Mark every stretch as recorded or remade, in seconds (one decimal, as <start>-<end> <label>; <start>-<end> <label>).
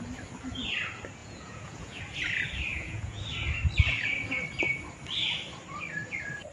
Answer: 0.0-1.2 recorded; 1.2-2.0 remade; 2.0-2.7 recorded; 2.7-3.2 remade; 3.2-6.5 recorded